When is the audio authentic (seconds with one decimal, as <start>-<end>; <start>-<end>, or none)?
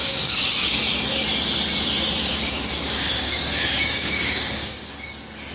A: 0.8-2.2; 4.9-5.5